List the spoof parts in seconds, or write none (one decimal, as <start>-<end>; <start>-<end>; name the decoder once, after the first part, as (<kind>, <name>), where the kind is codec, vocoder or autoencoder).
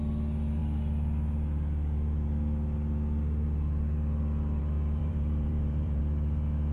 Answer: 5.0-6.0 (vocoder, BigVGAN v2)